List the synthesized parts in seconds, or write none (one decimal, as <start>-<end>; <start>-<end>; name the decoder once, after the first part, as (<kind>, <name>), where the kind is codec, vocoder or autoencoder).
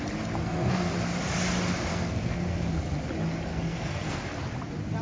0.4-0.9 (codec, SNAC); 1.9-2.7; 3.5-4.2